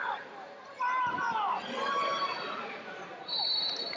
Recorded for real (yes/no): no